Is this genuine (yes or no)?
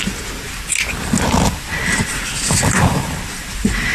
yes